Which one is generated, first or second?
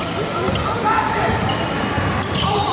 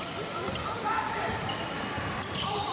second